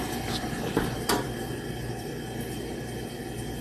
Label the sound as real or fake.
real